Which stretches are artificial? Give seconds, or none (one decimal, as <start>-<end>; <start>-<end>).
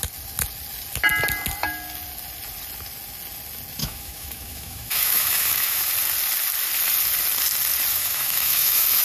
3.8-5.9; 7.9-9.0